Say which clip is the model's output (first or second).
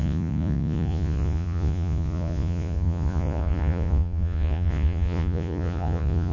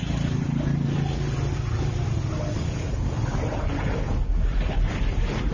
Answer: first